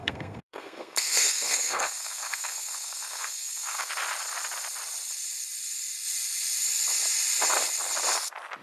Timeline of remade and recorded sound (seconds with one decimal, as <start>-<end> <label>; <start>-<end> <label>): 0.0-3.9 remade; 3.9-8.6 recorded